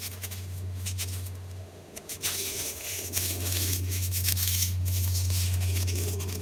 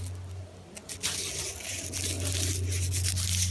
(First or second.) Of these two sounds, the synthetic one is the first